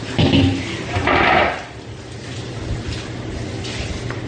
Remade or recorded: recorded